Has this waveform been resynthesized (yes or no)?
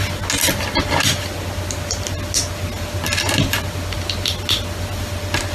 no